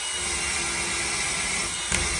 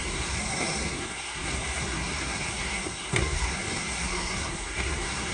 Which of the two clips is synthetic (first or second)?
second